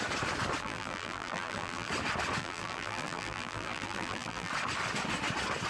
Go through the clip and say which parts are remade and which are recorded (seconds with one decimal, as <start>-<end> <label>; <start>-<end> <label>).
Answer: 0.0-0.6 recorded; 0.6-1.9 remade; 1.9-2.4 recorded; 2.4-4.5 remade; 4.5-5.7 recorded